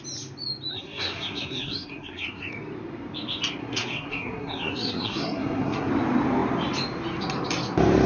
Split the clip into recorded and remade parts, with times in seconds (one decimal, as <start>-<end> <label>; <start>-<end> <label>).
0.0-0.7 recorded; 0.7-2.5 remade; 2.5-3.6 recorded; 3.6-5.9 remade; 5.9-8.1 recorded